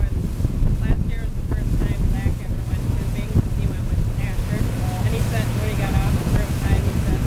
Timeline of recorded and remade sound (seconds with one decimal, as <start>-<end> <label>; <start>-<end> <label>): 0.0-7.3 recorded